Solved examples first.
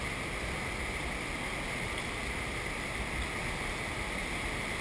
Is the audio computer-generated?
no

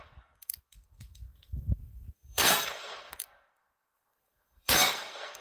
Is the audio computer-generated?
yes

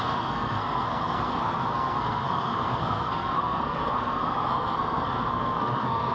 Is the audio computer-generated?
yes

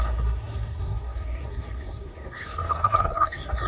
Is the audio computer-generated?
yes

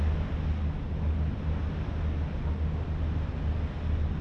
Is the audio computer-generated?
no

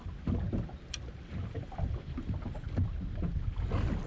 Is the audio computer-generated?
no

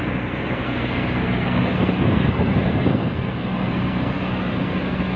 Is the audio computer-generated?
yes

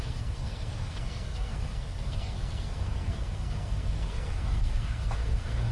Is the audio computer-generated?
yes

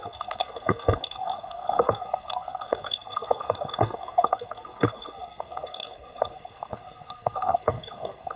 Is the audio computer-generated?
yes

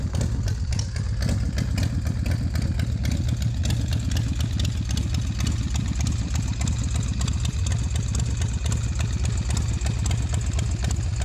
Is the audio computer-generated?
no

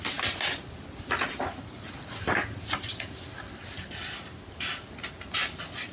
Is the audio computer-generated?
no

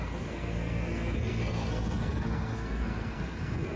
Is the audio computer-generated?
yes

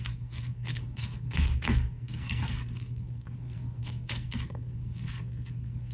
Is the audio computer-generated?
yes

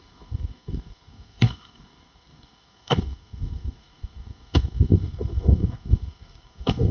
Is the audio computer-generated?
yes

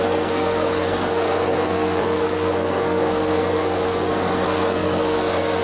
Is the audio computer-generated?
yes